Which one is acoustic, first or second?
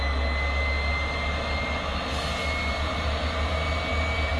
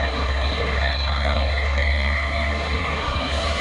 first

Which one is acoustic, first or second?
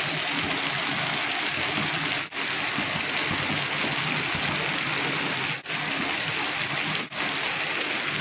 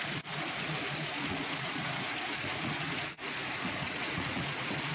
first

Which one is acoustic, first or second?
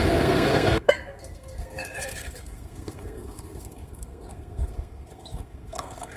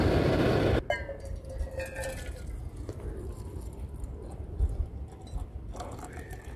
second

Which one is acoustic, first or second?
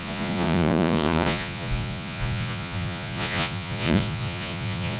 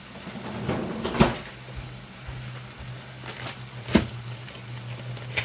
second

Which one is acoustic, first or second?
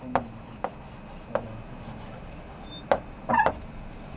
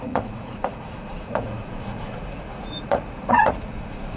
first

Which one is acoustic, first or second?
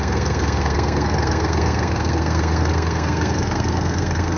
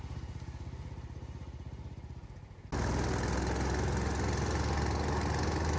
second